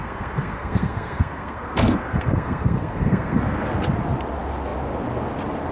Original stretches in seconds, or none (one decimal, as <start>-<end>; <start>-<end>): 3.4-5.7